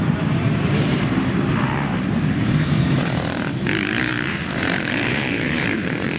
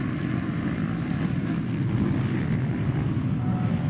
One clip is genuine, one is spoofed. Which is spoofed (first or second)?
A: first